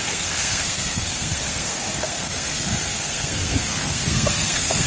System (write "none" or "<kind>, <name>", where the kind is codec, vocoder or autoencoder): codec, SNAC